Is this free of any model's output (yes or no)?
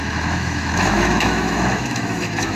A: no